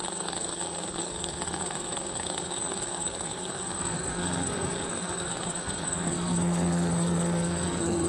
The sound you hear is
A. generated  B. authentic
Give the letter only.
A